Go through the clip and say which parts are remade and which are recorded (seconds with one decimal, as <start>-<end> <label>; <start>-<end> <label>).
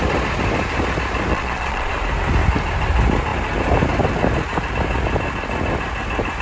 0.0-1.3 recorded; 1.3-1.9 remade; 1.9-6.4 recorded